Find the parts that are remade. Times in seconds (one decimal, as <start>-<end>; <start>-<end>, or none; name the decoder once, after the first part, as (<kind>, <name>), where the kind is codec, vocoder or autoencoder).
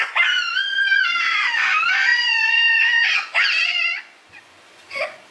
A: 0.0-5.3 (vocoder, Vocos)